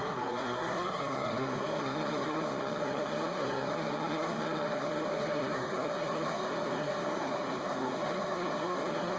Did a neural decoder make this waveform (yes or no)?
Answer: yes